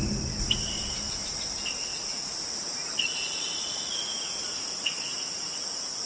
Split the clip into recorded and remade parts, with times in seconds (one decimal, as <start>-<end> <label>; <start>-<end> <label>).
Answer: 0.0-1.9 recorded; 1.9-5.6 remade; 5.6-6.1 recorded